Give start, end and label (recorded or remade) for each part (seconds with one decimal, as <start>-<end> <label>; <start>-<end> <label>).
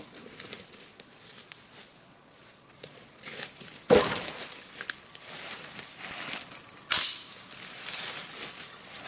0.0-0.9 recorded; 0.9-3.1 remade; 3.1-9.1 recorded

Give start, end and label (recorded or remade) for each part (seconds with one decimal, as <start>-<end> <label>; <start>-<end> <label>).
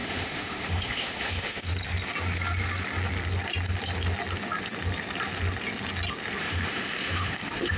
0.0-1.7 remade; 1.7-6.4 recorded; 6.4-7.8 remade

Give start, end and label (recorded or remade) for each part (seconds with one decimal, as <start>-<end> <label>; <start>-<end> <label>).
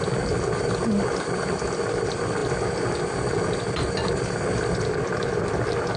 0.0-6.0 recorded